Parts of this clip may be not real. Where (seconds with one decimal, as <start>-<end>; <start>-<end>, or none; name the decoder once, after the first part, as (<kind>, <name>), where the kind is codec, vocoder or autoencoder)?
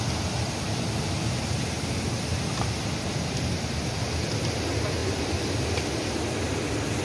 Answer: none